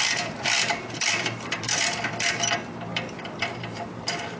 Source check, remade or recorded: remade